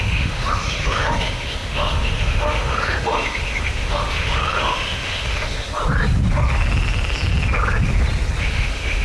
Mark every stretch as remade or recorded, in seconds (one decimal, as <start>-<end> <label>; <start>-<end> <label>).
0.0-5.7 remade; 5.7-8.4 recorded; 8.4-9.0 remade